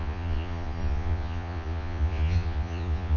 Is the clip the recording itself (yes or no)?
no